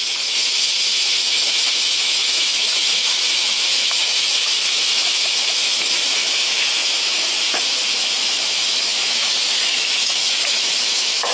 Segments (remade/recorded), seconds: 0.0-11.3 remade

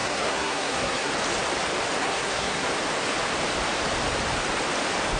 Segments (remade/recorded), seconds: 0.0-1.1 remade; 1.1-2.0 recorded; 2.0-2.7 remade; 2.7-5.2 recorded

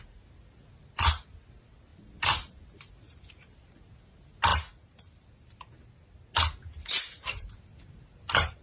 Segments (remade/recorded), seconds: 0.0-8.6 recorded

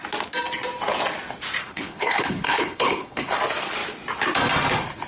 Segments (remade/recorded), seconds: 0.0-1.6 recorded; 1.6-3.4 remade; 3.4-5.1 recorded